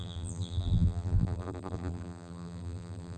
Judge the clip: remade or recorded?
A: remade